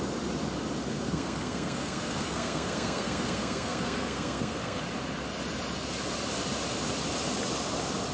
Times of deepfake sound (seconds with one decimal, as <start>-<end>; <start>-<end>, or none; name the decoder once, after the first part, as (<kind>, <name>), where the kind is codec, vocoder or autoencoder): 0.8-4.8 (codec, SNAC)